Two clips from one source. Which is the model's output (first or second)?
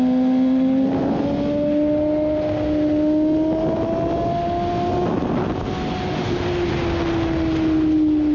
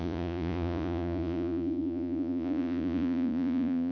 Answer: second